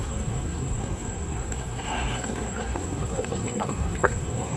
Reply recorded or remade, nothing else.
remade